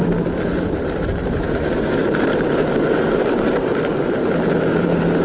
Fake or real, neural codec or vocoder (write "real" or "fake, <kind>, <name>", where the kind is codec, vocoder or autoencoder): fake, vocoder, BigVGAN v2